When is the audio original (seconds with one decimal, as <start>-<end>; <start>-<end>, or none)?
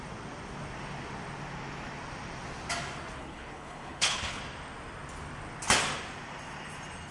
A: 0.0-3.2; 4.4-7.1